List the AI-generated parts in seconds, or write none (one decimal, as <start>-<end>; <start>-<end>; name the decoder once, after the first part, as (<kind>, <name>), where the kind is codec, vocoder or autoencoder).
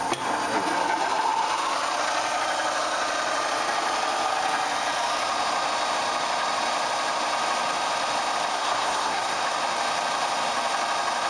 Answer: 8.5-9.4 (codec, SNAC)